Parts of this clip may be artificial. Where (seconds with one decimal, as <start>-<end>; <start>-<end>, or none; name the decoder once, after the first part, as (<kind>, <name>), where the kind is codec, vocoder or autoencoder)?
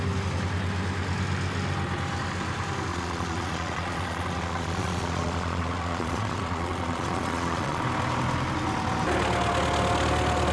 2.9-7.8 (vocoder, Vocos)